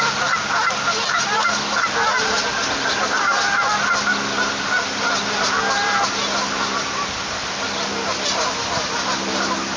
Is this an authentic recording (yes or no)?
yes